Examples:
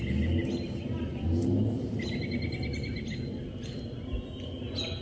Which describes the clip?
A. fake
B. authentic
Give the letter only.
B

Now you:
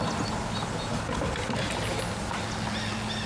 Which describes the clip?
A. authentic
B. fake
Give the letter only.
A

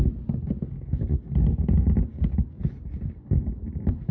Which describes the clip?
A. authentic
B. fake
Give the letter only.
A